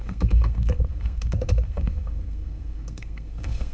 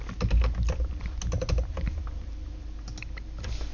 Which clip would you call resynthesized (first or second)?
first